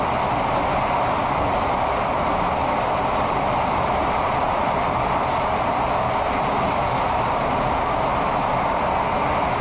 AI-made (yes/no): no